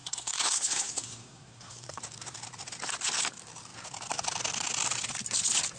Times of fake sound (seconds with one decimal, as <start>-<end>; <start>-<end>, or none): 0.0-2.0